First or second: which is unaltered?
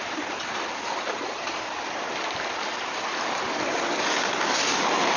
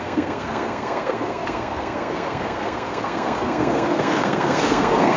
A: first